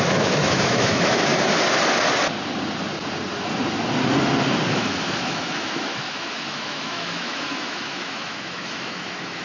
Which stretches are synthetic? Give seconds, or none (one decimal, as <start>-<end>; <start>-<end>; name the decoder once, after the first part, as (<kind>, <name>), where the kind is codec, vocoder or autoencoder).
0.0-1.3 (autoencoder, DAC-VAE); 4.7-9.4